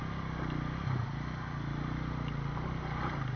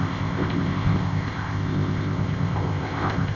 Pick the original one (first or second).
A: first